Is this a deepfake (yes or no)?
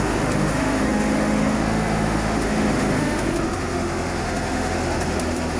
yes